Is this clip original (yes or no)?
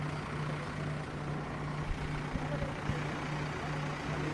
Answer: yes